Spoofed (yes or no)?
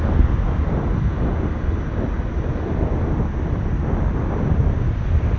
no